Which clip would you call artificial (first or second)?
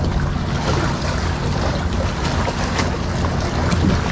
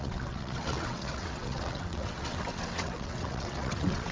second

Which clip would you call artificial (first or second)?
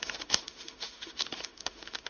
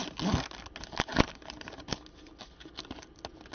first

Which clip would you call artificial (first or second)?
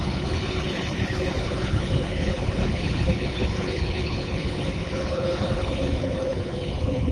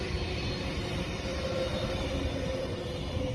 first